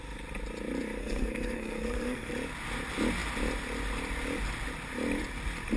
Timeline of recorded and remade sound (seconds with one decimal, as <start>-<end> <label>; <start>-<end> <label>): 0.0-1.0 recorded; 1.0-2.3 remade; 2.3-5.8 recorded